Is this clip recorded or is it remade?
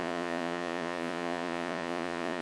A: remade